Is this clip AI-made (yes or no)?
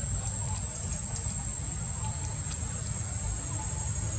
no